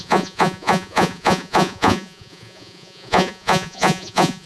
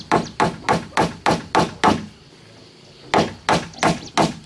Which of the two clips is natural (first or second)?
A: second